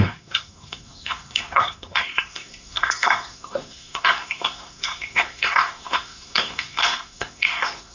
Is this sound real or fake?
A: fake